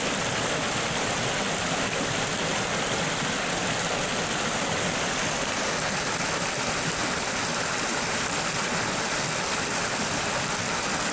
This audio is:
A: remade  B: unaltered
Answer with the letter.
B